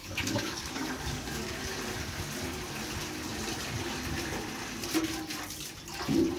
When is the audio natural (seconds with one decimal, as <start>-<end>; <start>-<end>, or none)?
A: 1.6-6.4